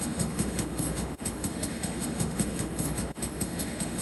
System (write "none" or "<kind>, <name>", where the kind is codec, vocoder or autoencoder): autoencoder, DAC-VAE